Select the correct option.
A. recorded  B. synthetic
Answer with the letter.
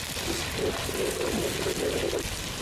A